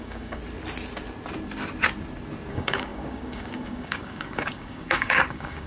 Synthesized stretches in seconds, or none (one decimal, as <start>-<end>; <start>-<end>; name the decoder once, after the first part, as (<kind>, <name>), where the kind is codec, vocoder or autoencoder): 0.0-0.4 (codec, DAC); 2.5-5.7